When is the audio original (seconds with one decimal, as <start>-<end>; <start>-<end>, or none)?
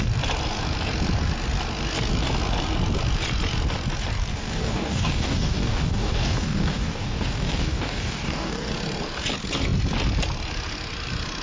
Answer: 0.0-4.3; 8.7-11.4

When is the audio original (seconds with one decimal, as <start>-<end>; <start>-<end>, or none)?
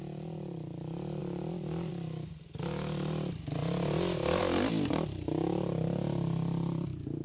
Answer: 0.0-7.2